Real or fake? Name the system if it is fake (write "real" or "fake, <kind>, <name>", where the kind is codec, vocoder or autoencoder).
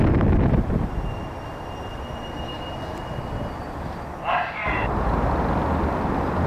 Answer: real